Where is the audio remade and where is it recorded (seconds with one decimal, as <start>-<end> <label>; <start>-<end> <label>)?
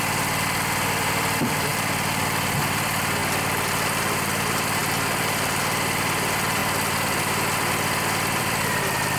0.0-3.2 remade; 3.2-4.0 recorded; 4.0-9.2 remade